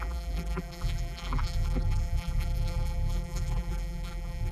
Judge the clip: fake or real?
fake